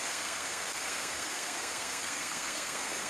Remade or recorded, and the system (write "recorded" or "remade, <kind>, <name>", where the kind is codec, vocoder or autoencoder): remade, codec, SNAC